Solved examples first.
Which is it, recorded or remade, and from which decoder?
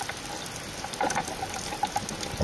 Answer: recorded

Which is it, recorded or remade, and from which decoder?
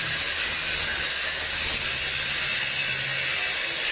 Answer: recorded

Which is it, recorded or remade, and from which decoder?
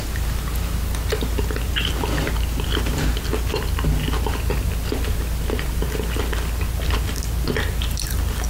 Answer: recorded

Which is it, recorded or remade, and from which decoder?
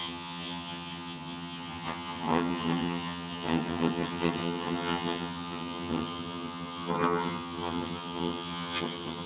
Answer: remade, vocoder, HiFi-GAN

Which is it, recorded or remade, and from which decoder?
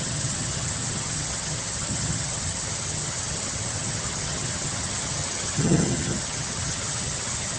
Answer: remade, vocoder, HiFi-GAN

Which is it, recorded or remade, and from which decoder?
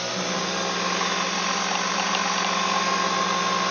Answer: recorded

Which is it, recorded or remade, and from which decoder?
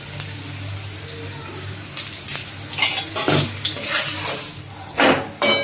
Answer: recorded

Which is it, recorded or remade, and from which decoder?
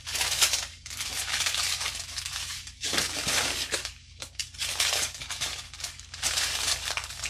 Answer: remade, codec, DAC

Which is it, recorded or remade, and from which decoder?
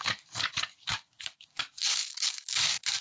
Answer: remade, codec, DAC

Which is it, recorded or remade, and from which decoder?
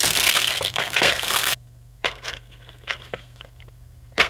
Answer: remade, codec, SNAC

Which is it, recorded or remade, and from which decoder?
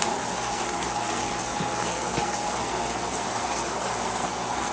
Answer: remade, codec, SNAC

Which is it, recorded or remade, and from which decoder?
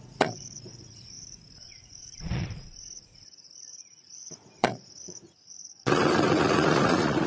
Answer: remade, vocoder, Vocos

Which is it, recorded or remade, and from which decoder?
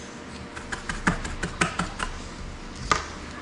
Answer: recorded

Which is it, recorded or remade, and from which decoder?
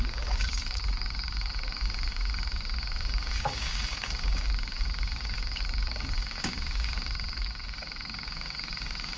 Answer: remade, codec, DAC